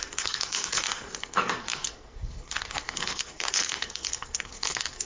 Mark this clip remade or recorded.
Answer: remade